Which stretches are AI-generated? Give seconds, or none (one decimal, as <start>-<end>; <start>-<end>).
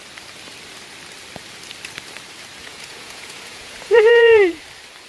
2.6-4.6